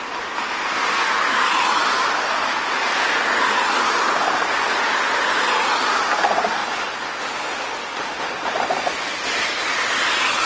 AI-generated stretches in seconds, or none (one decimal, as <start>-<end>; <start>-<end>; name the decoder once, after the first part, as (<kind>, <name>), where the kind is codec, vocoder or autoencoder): none